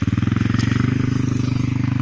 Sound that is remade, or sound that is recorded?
recorded